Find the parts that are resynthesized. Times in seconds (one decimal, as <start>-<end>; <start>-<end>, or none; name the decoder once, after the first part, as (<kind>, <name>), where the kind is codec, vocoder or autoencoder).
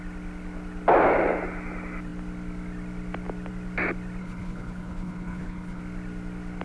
4.2-5.8 (codec, HILCodec)